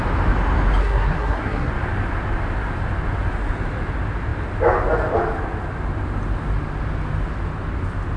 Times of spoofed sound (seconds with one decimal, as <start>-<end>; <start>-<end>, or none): 0.8-1.7